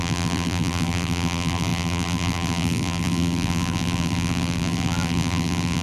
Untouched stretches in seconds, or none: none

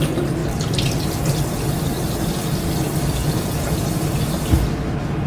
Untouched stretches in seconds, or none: 0.0-3.2; 3.9-5.3

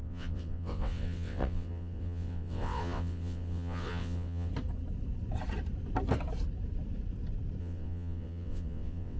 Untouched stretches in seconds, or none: 4.5-7.6